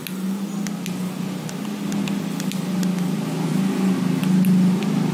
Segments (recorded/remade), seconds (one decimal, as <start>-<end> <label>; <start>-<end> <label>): 0.0-5.1 recorded